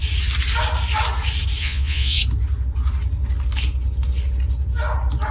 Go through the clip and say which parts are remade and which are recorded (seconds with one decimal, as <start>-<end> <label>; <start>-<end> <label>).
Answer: 0.0-1.6 recorded; 1.6-2.2 remade; 2.2-5.3 recorded